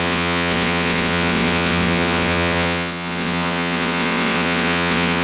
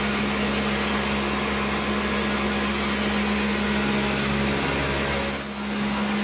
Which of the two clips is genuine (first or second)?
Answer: second